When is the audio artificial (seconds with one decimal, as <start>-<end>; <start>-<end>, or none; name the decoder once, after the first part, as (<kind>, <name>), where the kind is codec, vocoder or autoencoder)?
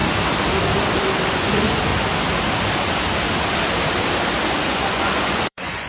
1.3-1.9 (vocoder, Vocos); 4.5-5.9